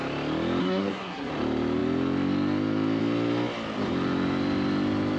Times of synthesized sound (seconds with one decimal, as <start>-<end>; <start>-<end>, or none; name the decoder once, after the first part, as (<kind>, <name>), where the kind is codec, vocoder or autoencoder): 0.6-1.3 (codec, SNAC)

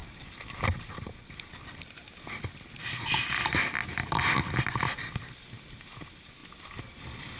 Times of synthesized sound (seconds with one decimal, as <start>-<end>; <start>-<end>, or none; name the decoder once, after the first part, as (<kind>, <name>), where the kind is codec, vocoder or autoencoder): none

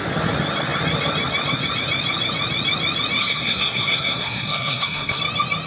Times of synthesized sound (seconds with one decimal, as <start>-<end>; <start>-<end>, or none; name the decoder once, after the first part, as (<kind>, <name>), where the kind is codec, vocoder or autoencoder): 3.2-5.2 (codec, SNAC)

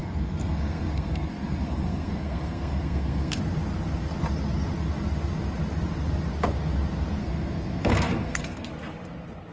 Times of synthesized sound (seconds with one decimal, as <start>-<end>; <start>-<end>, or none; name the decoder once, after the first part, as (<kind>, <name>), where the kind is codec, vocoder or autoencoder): 0.0-3.4 (codec, SNAC); 7.2-8.7